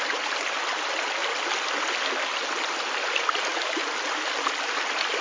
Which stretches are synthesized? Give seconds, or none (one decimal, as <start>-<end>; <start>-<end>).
none